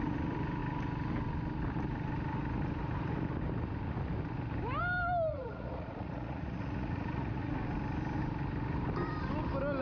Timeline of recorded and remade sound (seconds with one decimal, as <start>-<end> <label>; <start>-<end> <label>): 0.0-5.3 recorded; 5.3-7.5 remade; 7.5-9.8 recorded